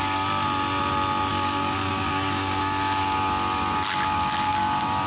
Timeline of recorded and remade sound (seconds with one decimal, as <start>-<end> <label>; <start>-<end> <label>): 0.0-1.3 recorded; 1.3-2.6 remade; 2.6-5.1 recorded